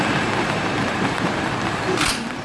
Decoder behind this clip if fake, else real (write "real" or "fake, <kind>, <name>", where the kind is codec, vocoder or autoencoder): fake, vocoder, BigVGAN v2